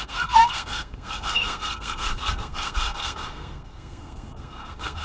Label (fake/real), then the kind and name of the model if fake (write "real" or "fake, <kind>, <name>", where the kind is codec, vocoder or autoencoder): fake, codec, SNAC